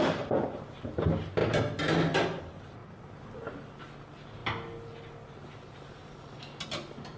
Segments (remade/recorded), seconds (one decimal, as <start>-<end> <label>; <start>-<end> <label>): 0.0-7.2 recorded